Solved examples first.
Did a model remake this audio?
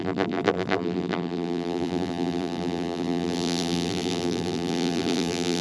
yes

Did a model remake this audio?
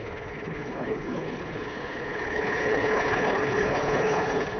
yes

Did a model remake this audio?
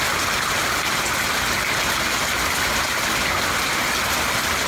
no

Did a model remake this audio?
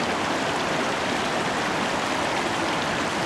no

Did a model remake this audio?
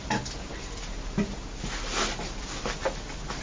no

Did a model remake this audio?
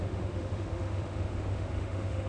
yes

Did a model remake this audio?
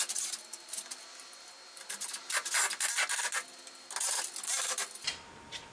no